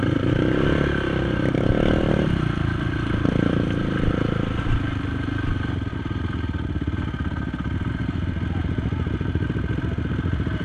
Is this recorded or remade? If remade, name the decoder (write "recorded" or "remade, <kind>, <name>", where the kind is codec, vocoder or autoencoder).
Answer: recorded